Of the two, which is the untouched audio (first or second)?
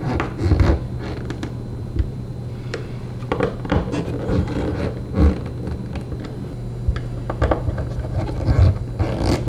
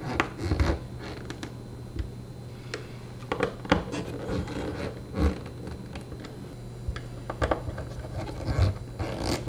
second